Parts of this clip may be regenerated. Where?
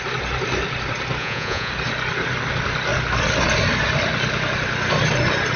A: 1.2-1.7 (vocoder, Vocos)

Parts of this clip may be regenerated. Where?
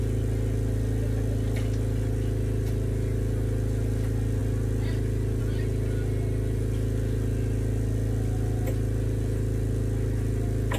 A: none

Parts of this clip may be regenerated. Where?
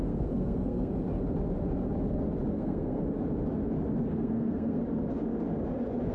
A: 0.0-0.9 (codec, SNAC); 2.5-3.0; 4.1-4.8